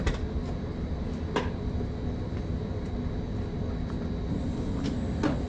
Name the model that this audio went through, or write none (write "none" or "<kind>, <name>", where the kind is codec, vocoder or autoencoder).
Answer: none